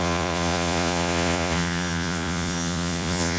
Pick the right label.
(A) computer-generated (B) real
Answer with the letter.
A